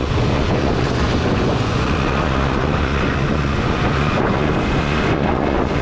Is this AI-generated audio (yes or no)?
yes